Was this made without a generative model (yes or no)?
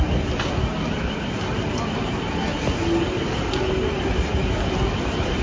yes